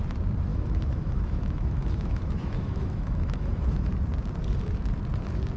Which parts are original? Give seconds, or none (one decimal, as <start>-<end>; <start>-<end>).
0.0-0.5; 3.9-5.6